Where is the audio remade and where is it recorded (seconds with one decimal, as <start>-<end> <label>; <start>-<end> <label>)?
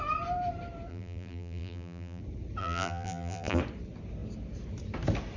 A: 0.0-0.9 recorded; 0.9-2.2 remade; 2.2-2.6 recorded; 2.6-3.6 remade; 3.6-5.4 recorded